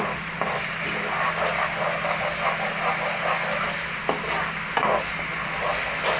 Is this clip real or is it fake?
real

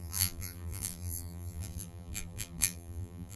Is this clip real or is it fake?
fake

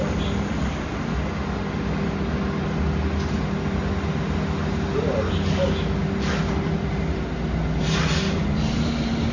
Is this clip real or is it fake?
real